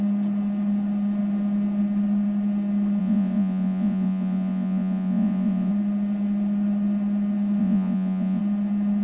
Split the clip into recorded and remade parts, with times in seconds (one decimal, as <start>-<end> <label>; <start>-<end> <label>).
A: 0.0-3.0 recorded; 3.0-5.7 remade; 5.7-7.6 recorded; 7.6-8.4 remade; 8.4-9.0 recorded